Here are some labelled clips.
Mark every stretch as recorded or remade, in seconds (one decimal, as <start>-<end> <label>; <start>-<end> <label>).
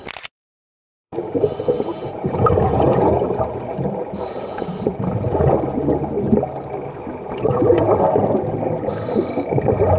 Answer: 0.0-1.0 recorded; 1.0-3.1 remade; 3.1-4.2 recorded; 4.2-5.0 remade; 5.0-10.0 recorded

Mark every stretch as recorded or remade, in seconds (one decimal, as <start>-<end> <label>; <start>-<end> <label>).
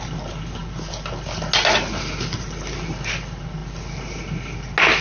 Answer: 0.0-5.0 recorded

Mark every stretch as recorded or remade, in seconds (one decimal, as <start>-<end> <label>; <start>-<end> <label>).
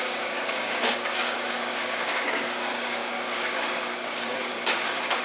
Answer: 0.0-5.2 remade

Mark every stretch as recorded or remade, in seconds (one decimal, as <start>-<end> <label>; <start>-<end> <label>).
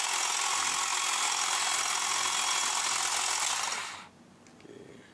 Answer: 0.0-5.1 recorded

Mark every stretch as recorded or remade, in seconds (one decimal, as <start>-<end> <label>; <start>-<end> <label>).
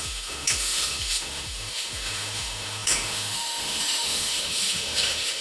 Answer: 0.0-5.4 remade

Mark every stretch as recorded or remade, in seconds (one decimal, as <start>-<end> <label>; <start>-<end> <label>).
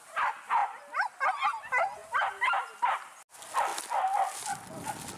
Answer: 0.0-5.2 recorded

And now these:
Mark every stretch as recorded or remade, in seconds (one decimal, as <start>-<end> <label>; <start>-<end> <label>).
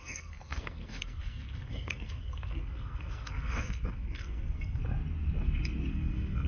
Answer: 0.0-4.8 remade; 4.8-5.9 recorded; 5.9-6.5 remade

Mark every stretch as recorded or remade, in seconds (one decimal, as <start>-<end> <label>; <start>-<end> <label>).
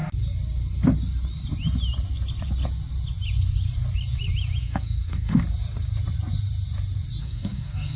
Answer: 0.0-4.6 recorded; 4.6-5.4 remade; 5.4-7.2 recorded; 7.2-8.0 remade